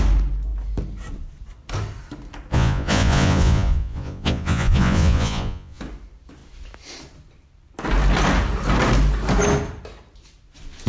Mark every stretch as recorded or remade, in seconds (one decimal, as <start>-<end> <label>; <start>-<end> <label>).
0.0-2.5 recorded; 2.5-5.8 remade; 5.8-10.9 recorded